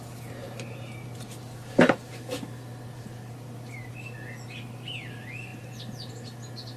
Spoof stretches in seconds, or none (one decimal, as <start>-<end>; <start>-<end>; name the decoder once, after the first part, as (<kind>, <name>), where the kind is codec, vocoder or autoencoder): none